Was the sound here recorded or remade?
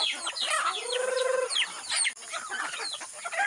recorded